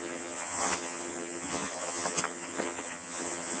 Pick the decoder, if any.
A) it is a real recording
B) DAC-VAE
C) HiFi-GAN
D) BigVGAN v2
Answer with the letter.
C